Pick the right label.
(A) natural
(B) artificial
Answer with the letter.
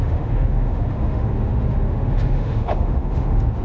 B